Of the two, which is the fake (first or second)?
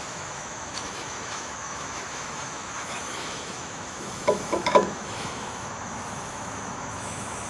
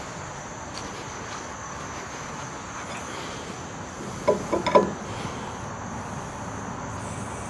first